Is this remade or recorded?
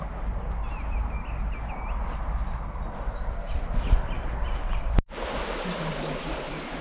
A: recorded